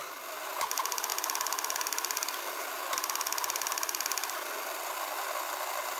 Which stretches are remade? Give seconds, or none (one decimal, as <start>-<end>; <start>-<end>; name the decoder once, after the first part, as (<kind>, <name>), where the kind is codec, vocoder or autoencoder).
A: none